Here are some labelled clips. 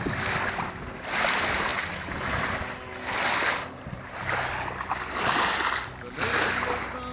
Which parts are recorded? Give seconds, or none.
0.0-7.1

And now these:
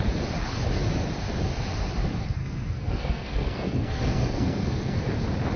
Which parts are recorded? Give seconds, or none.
0.0-2.4; 5.0-5.6

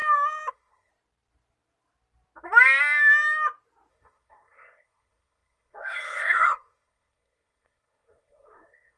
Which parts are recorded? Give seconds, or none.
0.0-0.5; 0.9-3.9

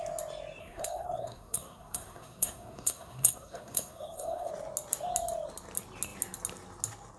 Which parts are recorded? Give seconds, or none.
0.0-0.6; 4.5-7.2